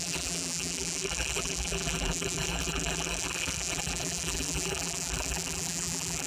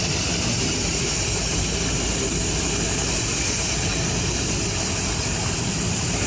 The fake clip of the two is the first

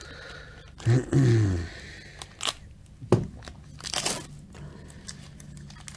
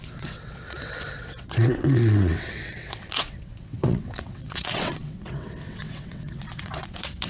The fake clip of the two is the second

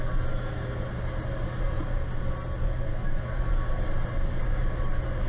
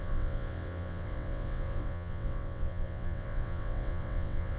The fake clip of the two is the second